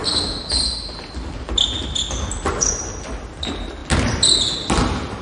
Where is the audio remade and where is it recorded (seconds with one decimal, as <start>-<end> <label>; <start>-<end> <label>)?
0.0-5.2 recorded